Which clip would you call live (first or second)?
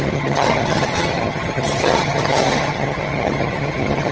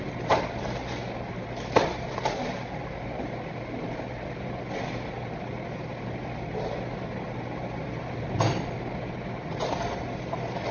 second